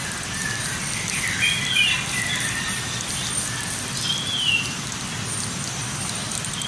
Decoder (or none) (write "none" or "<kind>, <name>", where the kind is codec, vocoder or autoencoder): none